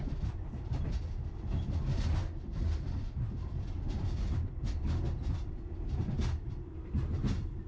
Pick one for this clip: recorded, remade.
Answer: recorded